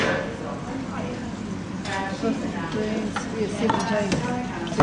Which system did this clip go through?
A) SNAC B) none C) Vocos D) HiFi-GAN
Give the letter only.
B